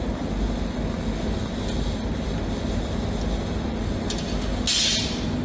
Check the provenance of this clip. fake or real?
real